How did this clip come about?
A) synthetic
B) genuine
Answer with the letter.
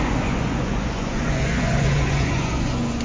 A